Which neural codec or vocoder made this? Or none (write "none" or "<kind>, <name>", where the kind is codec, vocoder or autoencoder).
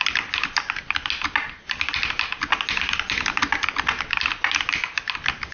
none